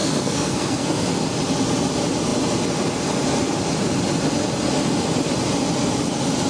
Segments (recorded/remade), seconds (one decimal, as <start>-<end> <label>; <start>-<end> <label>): 0.0-1.2 remade; 1.2-6.5 recorded

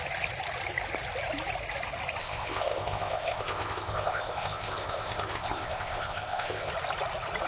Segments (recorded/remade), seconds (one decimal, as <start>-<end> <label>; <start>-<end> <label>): 0.0-2.2 recorded; 2.2-6.7 remade; 6.7-7.5 recorded

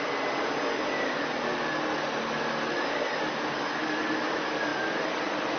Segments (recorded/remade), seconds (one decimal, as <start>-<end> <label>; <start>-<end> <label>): 0.0-4.7 recorded; 4.7-5.6 remade

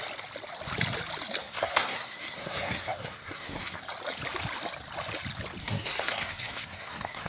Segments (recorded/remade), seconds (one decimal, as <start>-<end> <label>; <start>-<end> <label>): 0.0-1.4 recorded; 1.4-3.8 remade; 3.8-5.6 recorded; 5.6-7.3 remade

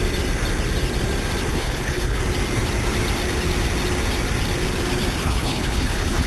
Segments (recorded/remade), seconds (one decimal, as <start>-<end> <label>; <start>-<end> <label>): 0.0-1.5 recorded; 1.5-2.2 remade; 2.2-5.2 recorded; 5.2-6.3 remade